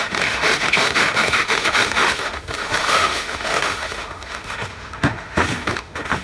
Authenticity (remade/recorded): remade